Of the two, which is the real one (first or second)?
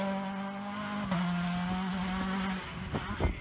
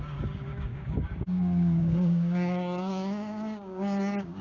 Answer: first